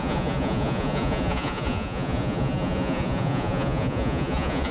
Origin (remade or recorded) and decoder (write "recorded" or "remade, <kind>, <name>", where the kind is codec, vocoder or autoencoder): remade, vocoder, Vocos